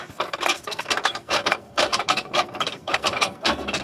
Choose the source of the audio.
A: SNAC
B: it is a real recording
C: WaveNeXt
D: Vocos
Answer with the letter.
A